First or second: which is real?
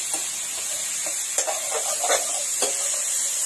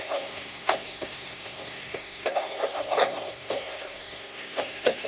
first